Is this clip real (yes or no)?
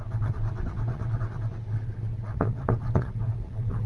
no